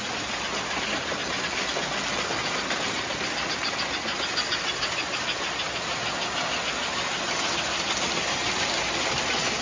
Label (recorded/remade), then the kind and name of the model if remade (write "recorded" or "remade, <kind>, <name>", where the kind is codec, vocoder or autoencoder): recorded